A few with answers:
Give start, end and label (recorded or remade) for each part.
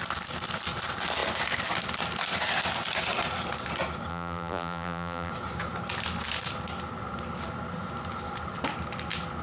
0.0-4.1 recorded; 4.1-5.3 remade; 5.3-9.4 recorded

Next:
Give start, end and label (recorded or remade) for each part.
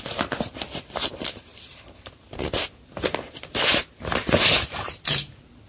0.0-5.7 recorded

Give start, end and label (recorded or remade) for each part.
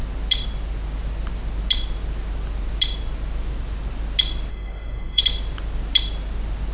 0.0-4.5 recorded; 4.5-5.2 remade; 5.2-6.7 recorded